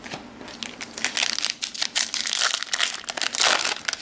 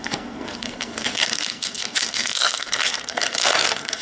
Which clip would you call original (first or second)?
first